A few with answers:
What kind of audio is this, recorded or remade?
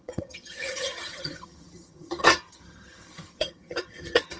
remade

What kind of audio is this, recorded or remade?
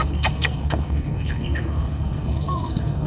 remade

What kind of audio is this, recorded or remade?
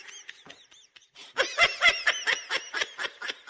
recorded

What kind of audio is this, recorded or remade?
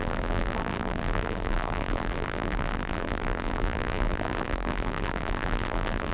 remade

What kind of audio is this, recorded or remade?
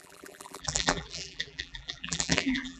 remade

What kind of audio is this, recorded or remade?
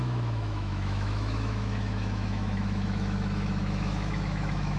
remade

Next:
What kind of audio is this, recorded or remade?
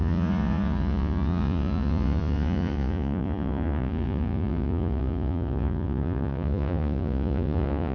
remade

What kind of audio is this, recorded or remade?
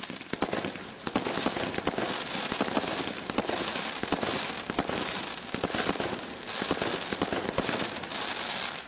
recorded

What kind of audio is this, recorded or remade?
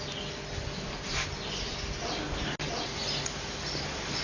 recorded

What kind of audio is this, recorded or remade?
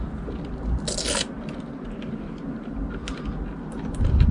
recorded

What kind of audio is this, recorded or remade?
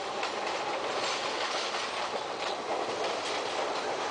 remade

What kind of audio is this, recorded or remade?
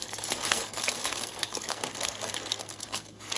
remade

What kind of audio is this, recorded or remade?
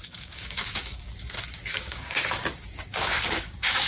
remade